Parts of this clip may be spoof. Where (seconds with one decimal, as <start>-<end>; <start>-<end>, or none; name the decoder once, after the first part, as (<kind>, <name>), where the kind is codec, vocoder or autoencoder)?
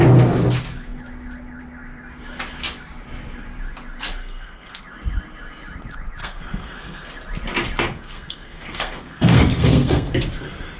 4.2-4.8 (codec, SNAC); 6.2-7.1; 7.9-10.1